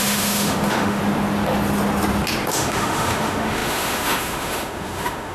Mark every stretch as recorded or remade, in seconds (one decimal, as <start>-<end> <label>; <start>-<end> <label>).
0.0-1.0 remade; 1.0-2.5 recorded; 2.5-5.3 remade